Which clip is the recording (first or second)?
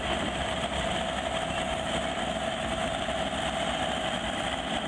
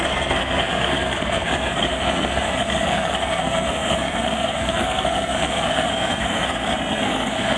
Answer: first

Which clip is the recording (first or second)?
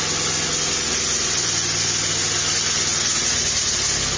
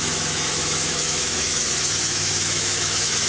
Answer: first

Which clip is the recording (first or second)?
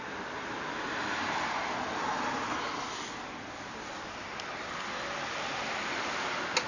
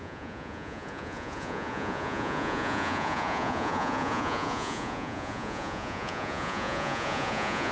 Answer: first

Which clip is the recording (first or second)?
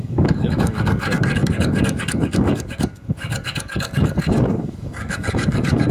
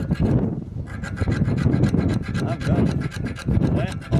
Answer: second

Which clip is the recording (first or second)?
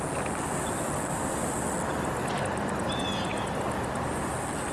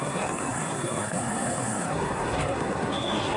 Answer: first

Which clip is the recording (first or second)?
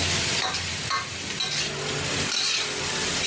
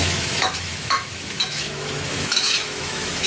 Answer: first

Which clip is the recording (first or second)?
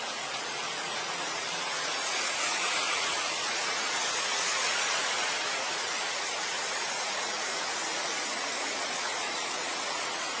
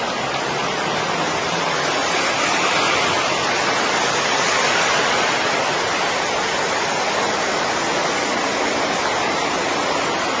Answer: second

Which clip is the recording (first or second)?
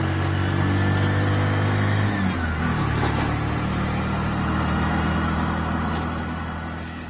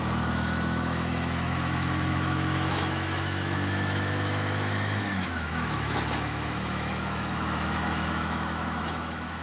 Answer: first